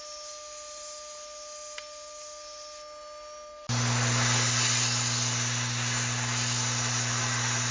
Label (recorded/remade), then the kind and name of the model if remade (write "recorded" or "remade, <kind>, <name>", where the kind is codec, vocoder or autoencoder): recorded